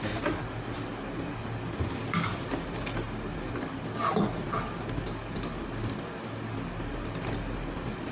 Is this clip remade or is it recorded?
recorded